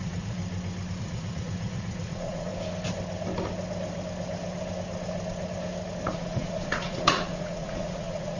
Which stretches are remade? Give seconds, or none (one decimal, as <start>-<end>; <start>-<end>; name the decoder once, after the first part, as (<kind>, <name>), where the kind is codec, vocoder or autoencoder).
0.0-0.4 (vocoder, Vocos); 1.0-2.5; 6.1-8.4

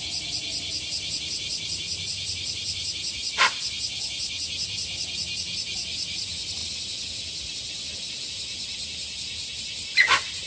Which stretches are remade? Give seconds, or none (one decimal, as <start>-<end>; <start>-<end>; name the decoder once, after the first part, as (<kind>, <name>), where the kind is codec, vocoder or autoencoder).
none

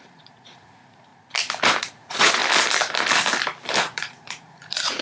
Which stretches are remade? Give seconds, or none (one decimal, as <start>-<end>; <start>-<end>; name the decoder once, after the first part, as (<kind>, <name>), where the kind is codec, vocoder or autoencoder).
0.0-1.1 (vocoder, Vocos); 1.8-2.4; 3.8-5.0

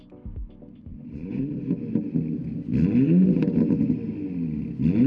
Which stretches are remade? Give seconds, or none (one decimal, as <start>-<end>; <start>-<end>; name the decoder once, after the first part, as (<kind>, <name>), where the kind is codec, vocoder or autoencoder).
0.9-1.5 (vocoder, Vocos)

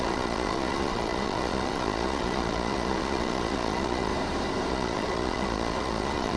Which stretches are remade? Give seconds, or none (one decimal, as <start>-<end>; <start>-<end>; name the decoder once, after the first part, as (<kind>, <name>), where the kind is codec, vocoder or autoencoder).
0.0-4.1 (vocoder, Vocos); 4.7-6.4

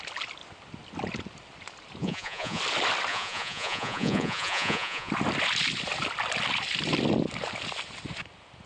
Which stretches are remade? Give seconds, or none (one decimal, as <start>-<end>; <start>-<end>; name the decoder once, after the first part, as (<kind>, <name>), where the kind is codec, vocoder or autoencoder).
2.0-2.6 (vocoder, Vocos); 3.1-5.1

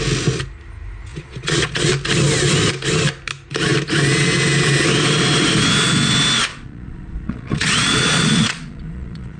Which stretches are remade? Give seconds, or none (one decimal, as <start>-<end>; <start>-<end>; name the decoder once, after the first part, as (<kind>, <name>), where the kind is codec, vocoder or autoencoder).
1.1-1.9 (vocoder, Vocos); 6.5-9.4